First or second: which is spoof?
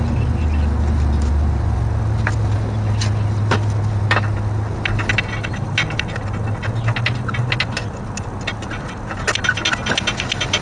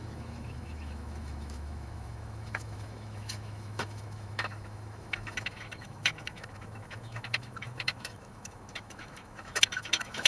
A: second